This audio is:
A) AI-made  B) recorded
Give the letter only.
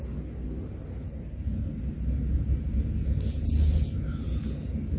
B